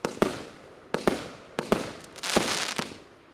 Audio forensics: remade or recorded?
recorded